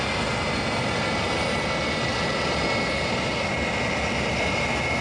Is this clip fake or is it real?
real